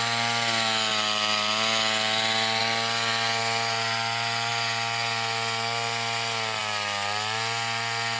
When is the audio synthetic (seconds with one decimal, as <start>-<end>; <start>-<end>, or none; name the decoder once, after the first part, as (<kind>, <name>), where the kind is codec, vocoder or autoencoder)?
none